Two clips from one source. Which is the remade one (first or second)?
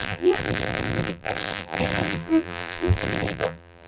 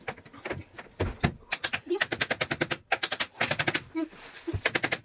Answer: first